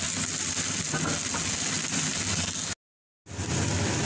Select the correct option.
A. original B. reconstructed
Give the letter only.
A